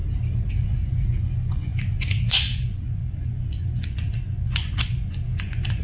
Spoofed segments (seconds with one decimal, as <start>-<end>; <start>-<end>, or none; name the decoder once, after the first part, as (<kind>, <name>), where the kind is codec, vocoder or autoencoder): 0.5-5.8 (vocoder, Vocos)